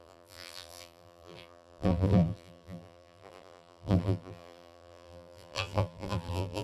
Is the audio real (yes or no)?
no